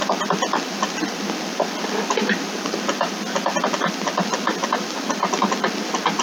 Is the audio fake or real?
real